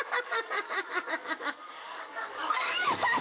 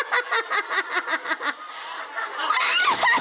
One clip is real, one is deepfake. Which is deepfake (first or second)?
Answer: first